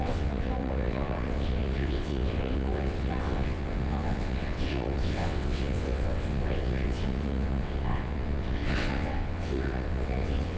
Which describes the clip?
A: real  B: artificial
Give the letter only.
B